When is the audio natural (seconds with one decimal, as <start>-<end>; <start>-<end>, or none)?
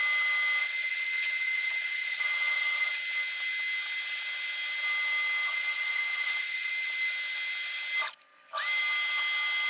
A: 0.0-0.6; 2.9-5.5; 6.9-9.7